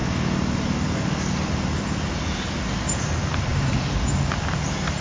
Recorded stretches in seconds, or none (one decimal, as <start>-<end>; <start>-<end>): 0.0-5.0